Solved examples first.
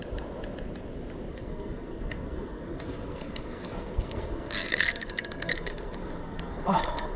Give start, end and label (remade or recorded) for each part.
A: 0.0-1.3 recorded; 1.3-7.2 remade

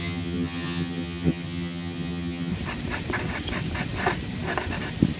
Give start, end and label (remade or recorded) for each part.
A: 0.0-2.5 remade; 2.5-5.2 recorded

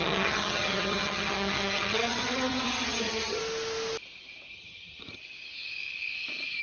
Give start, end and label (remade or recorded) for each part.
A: 0.0-3.4 remade; 3.4-4.5 recorded; 4.5-5.2 remade; 5.2-6.6 recorded

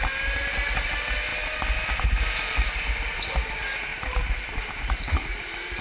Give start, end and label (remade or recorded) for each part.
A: 0.0-3.9 recorded; 3.9-4.5 remade; 4.5-5.8 recorded

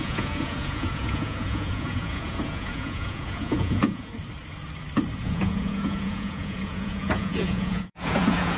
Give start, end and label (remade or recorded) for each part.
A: 0.0-4.1 remade; 4.1-5.2 recorded; 5.2-8.6 remade

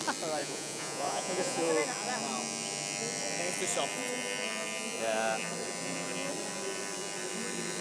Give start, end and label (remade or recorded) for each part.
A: 0.0-0.4 recorded; 0.4-1.7 remade; 1.7-7.8 recorded